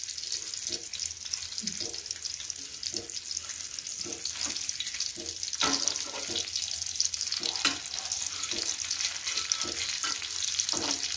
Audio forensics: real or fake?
real